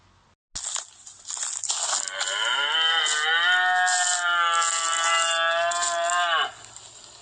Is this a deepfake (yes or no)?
no